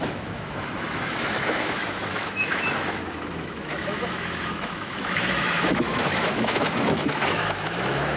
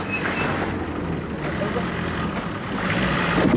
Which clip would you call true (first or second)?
second